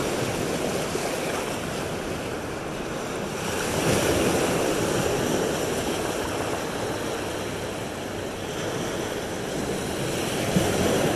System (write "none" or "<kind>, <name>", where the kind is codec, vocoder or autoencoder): none